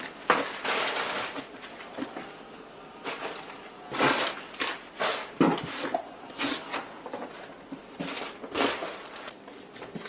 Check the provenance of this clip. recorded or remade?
recorded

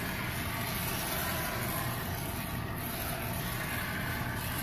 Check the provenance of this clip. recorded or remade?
recorded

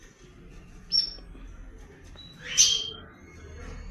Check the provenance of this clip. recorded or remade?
recorded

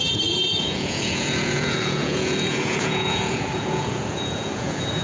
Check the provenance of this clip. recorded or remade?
remade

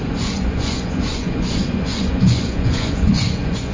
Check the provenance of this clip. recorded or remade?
remade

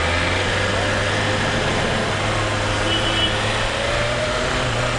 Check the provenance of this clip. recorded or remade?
recorded